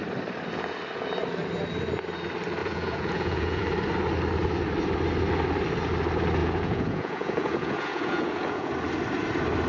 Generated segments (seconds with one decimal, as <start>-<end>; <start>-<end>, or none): 2.6-3.6; 6.4-8.7